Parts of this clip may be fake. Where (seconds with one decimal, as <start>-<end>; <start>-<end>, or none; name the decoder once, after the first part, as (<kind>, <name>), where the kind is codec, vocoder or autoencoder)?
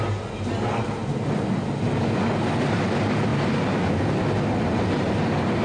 none